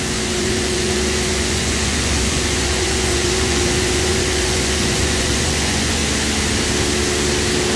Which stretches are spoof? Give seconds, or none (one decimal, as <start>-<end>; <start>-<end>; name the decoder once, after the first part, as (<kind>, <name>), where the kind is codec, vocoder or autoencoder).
0.0-6.0 (vocoder, Vocos)